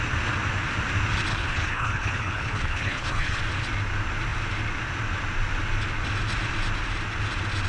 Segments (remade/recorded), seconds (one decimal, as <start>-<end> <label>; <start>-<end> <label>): 0.0-1.3 recorded; 1.3-3.4 remade; 3.4-7.7 recorded